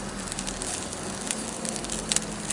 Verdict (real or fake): real